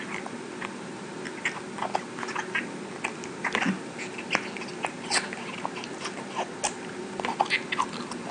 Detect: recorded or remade recorded